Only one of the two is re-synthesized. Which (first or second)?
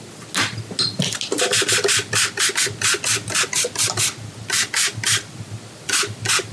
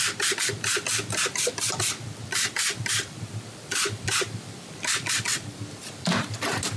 second